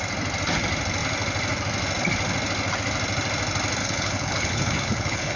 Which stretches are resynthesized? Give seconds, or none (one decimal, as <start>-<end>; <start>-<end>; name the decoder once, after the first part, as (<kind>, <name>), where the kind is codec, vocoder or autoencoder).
3.8-5.4 (codec, HILCodec)

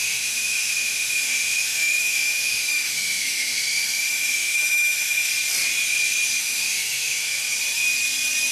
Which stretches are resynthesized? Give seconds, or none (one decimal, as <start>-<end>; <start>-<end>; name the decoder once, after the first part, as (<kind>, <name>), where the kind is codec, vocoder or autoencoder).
0.0-5.3 (autoencoder, DAC-VAE); 6.4-7.3

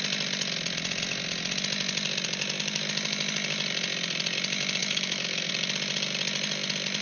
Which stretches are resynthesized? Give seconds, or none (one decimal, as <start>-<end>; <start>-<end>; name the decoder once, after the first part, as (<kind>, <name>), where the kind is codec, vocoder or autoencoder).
4.8-5.5 (autoencoder, DAC-VAE)

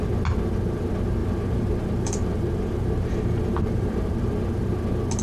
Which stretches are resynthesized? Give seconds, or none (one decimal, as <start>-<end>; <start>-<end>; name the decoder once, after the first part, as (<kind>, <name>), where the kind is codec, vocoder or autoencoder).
1.2-4.3 (vocoder, BigVGAN v2)

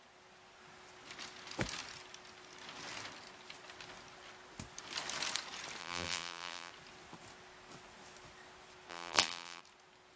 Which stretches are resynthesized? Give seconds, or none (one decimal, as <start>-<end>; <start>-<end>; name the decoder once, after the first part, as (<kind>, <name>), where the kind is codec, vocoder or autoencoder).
5.8-6.7 (vocoder, BigVGAN v2); 8.9-9.6